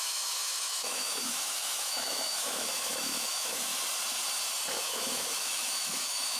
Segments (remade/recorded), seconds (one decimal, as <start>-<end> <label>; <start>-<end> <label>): 0.0-3.7 remade; 3.7-4.8 recorded; 4.8-6.4 remade